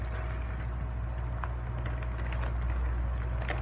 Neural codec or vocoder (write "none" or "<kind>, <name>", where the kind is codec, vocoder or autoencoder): none